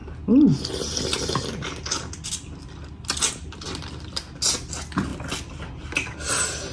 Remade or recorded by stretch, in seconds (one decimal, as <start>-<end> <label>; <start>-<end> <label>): 0.0-6.7 recorded